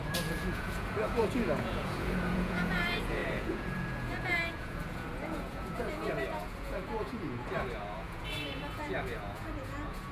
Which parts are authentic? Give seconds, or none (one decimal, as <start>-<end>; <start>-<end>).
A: none